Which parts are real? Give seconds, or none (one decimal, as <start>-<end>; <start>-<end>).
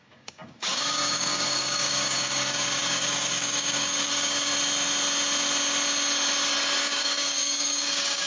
4.5-6.8